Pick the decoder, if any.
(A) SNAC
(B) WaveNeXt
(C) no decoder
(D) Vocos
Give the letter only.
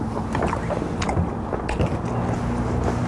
C